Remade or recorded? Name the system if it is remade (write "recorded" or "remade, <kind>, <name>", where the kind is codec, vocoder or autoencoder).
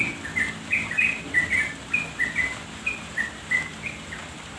recorded